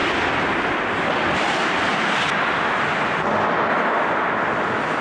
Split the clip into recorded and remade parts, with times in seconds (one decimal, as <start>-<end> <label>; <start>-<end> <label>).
0.0-5.0 recorded